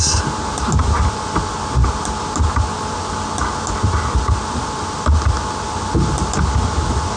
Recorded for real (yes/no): yes